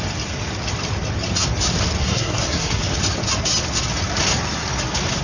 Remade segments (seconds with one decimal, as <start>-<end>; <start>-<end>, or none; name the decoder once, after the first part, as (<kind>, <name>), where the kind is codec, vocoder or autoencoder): 2.0-2.8 (codec, SNAC)